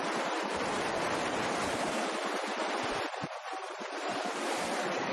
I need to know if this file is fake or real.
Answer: fake